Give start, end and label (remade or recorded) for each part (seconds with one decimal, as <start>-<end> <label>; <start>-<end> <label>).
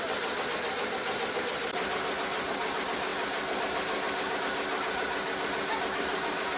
0.0-6.6 recorded